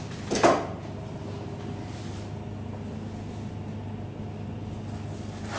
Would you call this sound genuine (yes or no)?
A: yes